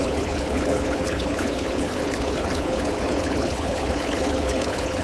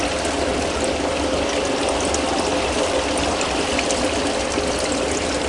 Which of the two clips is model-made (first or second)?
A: first